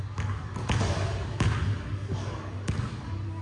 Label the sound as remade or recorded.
remade